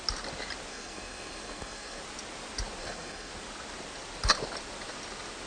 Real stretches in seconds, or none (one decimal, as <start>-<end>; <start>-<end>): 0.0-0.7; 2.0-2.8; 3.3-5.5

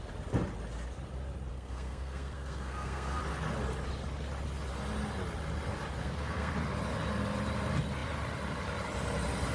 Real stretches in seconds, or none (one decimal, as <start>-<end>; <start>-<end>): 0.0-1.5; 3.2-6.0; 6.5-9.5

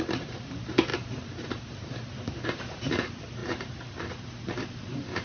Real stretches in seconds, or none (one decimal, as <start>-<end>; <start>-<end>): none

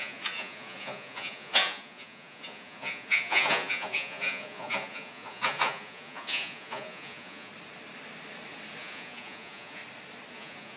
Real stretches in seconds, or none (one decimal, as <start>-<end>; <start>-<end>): 7.5-8.8; 9.8-10.3

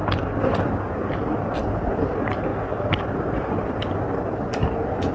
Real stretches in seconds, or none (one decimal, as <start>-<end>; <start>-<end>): 0.0-2.5; 3.7-5.1

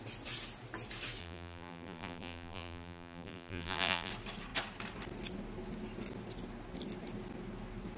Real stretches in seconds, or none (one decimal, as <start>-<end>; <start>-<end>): 0.0-1.2; 4.1-8.0

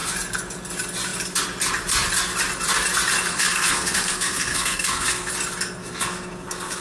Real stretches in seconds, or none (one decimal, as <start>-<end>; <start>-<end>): 0.0-3.3; 5.3-5.8